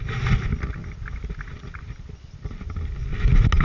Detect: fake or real real